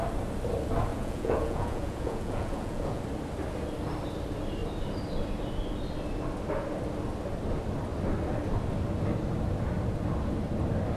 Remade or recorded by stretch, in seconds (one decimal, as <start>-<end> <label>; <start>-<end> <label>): 0.0-0.9 recorded; 0.9-3.0 remade; 3.0-11.0 recorded